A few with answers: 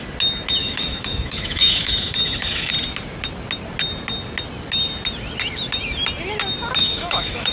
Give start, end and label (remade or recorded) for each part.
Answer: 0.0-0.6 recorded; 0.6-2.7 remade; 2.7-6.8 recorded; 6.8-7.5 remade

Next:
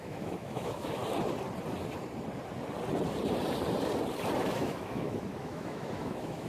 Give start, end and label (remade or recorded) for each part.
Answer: 0.0-1.0 remade; 1.0-4.4 recorded; 4.4-6.5 remade

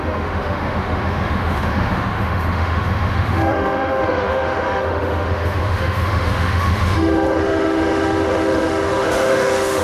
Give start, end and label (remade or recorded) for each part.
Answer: 0.0-9.8 remade

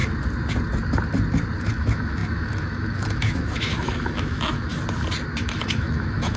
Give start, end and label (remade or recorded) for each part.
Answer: 0.0-1.6 recorded; 1.6-4.7 remade; 4.7-5.4 recorded; 5.4-6.4 remade

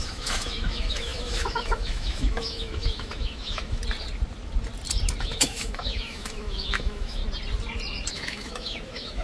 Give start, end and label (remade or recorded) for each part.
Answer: 0.0-3.8 remade; 3.8-5.2 recorded; 5.2-7.2 remade; 7.2-8.1 recorded; 8.1-9.2 remade

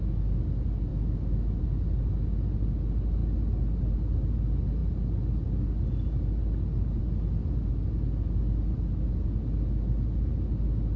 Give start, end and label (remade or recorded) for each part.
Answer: 0.0-0.9 recorded; 0.9-1.6 remade; 1.6-11.0 recorded